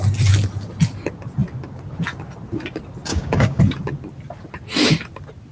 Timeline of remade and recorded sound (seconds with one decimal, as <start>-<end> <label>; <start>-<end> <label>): 0.0-3.1 recorded; 3.1-3.6 remade; 3.6-5.5 recorded